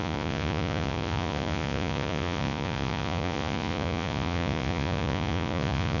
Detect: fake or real fake